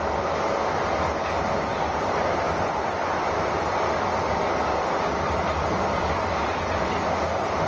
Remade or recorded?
recorded